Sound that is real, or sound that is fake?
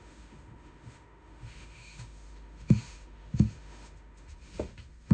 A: fake